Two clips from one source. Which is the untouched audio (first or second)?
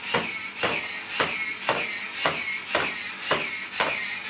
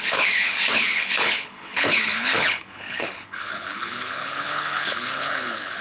first